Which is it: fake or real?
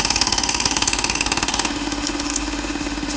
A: fake